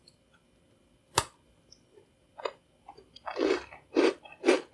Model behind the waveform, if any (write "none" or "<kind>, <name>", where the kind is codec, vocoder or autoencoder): none